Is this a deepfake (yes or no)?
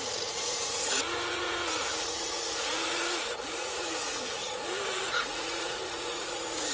yes